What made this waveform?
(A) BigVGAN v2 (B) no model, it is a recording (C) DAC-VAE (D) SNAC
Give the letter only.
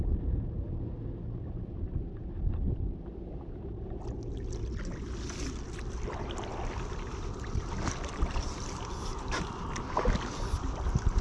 B